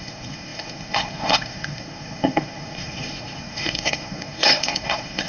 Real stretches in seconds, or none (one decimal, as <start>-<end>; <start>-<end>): none